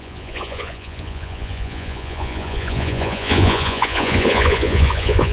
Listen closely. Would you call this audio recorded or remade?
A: remade